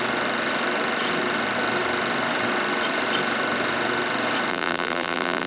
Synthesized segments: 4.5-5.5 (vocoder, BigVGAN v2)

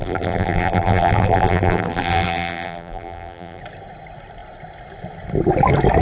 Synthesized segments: 0.0-3.6 (vocoder, BigVGAN v2)

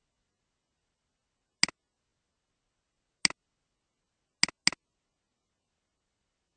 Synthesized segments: none

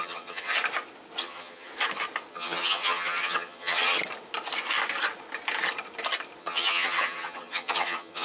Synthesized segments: 0.0-0.5 (vocoder, HiFi-GAN); 1.2-1.7; 2.3-4.0; 6.4-8.2